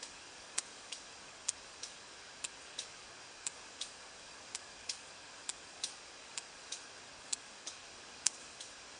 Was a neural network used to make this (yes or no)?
yes